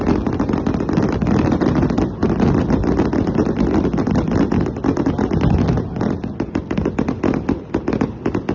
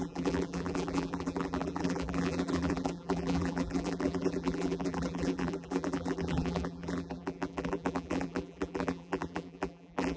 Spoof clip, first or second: second